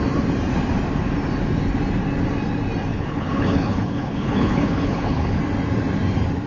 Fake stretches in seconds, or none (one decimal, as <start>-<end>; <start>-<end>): 2.9-5.4